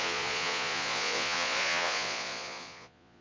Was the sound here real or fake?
fake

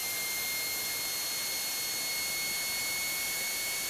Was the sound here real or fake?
real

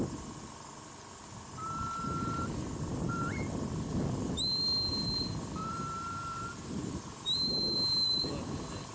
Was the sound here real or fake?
real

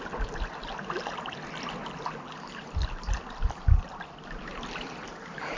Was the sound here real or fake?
real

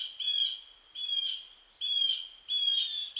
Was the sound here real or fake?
real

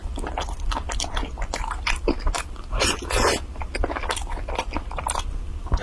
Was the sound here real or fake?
real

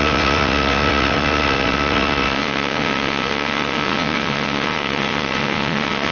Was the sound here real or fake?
fake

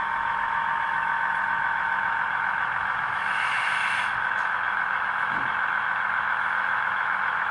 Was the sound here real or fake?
fake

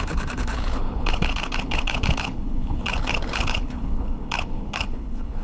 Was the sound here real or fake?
fake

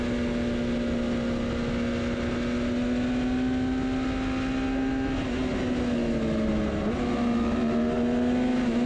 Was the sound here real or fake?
real